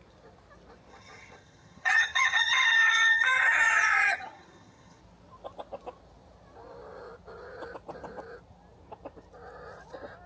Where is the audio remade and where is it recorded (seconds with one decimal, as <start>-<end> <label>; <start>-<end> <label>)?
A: 0.0-0.9 recorded; 0.9-5.0 remade; 5.0-10.3 recorded